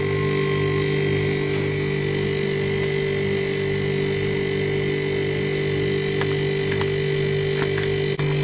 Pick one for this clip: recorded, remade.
recorded